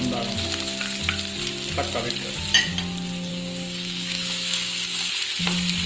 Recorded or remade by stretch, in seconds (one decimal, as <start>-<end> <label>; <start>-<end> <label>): 0.0-3.3 recorded; 3.3-5.1 remade; 5.1-5.9 recorded